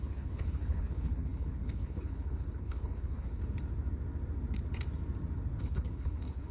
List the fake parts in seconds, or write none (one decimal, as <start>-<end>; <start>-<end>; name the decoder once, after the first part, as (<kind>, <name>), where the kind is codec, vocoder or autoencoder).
0.0-3.4 (codec, HILCodec); 5.6-6.5